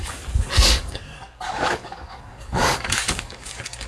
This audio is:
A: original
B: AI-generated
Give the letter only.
B